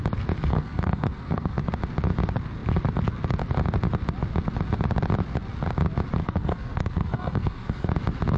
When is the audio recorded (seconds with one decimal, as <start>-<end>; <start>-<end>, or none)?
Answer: 0.0-0.5; 1.6-6.2; 7.9-8.4